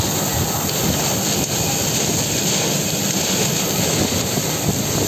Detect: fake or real real